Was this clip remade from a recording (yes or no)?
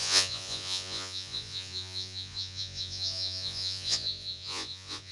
yes